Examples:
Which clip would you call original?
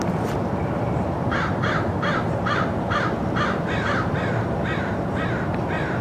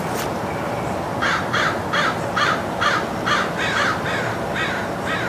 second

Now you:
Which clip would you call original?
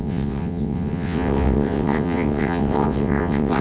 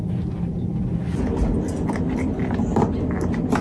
second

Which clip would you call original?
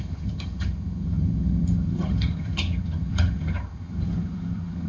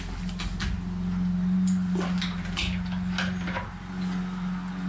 second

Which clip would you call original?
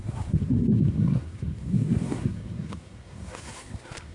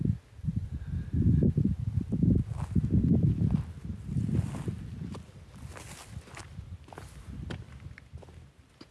second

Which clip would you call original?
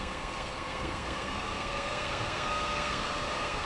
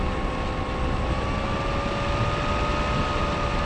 second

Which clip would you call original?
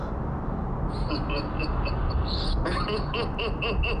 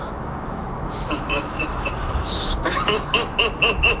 first